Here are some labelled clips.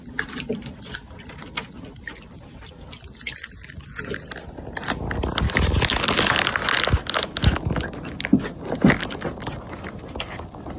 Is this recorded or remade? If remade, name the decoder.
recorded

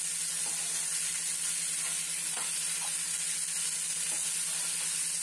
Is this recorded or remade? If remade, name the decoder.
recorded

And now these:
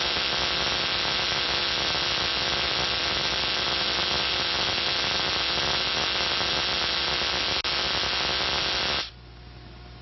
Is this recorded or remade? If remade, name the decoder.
recorded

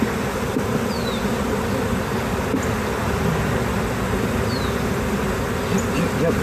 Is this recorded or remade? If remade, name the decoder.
recorded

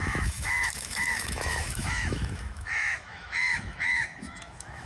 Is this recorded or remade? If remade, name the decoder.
remade, autoencoder, DAC-VAE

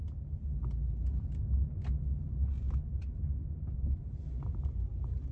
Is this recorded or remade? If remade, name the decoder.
recorded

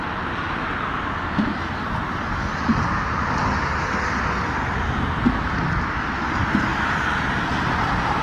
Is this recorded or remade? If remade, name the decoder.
recorded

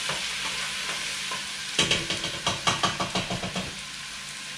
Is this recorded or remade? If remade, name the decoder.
recorded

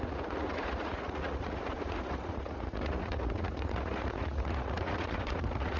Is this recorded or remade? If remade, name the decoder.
remade, vocoder, Vocos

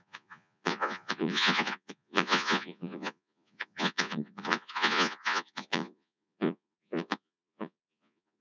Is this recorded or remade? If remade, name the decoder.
remade, vocoder, Vocos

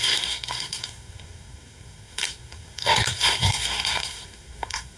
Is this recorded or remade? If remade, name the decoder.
remade, codec, SNAC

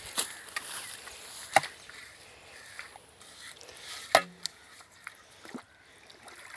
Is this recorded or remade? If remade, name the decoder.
recorded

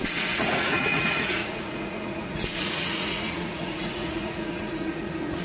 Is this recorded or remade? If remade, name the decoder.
remade, vocoder, Vocos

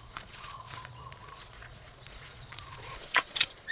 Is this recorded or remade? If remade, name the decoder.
remade, vocoder, Vocos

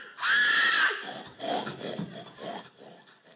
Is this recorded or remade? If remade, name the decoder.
recorded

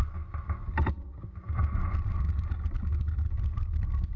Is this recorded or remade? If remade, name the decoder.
recorded